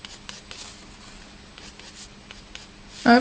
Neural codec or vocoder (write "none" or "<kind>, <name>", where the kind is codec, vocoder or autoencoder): none